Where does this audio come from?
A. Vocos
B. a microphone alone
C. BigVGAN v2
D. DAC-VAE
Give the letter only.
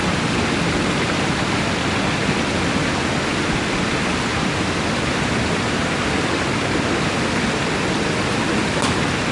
B